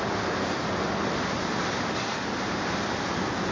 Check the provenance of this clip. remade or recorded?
recorded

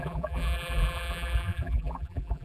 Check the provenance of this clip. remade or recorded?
remade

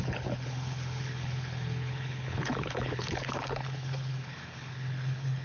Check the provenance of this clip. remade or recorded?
remade